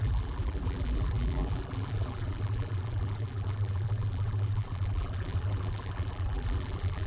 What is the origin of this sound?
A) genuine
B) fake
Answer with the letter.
B